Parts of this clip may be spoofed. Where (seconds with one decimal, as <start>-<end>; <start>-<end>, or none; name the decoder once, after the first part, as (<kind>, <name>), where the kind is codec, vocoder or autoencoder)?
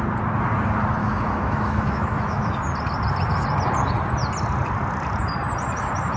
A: 1.0-2.6 (autoencoder, DAC-VAE)